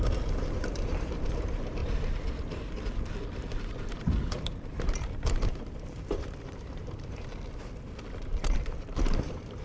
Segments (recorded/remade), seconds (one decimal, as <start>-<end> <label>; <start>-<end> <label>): 0.0-1.8 remade; 1.8-4.3 recorded; 4.3-7.3 remade; 7.3-8.2 recorded; 8.2-9.6 remade